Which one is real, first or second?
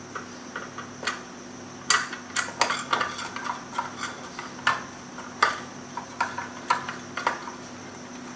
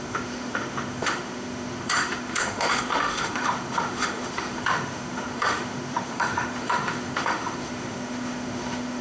first